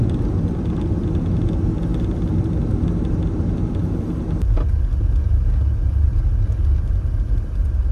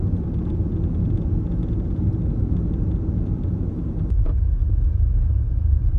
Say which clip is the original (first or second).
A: first